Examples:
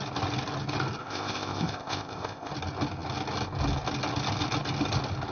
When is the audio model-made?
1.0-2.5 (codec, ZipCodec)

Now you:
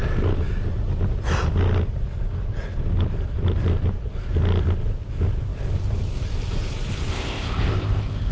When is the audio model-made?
7.1-8.3 (codec, ZipCodec)

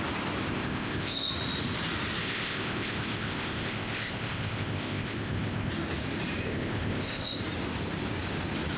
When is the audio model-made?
0.5-1.3 (codec, ZipCodec); 2.2-5.7; 6.4-7.4

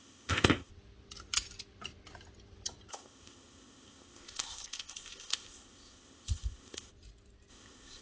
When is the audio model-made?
0.0-0.7 (codec, ZipCodec); 2.9-6.9; 7.5-8.0